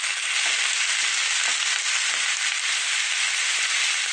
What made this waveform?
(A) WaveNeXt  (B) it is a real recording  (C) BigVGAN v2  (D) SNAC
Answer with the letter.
B